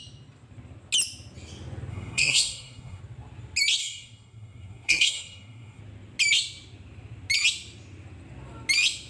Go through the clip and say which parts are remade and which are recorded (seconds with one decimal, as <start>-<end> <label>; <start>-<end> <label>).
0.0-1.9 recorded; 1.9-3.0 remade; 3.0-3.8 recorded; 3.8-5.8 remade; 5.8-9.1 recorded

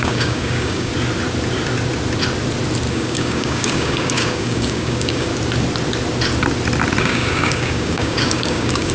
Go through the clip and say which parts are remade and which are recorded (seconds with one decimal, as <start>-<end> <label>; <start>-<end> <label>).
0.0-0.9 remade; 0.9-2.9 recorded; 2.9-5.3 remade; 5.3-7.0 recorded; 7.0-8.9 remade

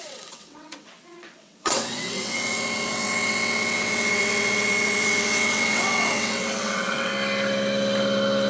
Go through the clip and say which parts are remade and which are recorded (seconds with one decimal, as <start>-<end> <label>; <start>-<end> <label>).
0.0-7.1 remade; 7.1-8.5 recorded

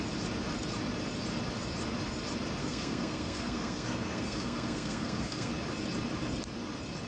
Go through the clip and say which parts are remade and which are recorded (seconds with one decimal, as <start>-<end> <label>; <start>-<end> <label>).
0.0-2.6 recorded; 2.6-5.5 remade; 5.5-7.1 recorded

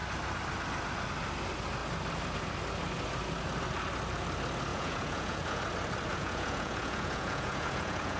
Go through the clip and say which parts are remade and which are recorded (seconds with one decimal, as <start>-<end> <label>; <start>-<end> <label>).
0.0-4.7 recorded; 4.7-5.6 remade; 5.6-6.1 recorded; 6.1-8.2 remade